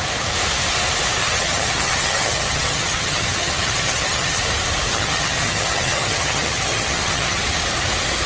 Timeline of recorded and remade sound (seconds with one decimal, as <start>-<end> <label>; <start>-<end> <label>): 0.0-1.2 recorded; 1.2-4.4 remade; 4.4-4.9 recorded; 4.9-7.4 remade; 7.4-8.3 recorded